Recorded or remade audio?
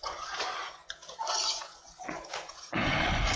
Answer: remade